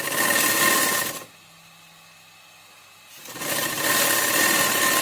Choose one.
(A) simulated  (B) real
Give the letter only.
B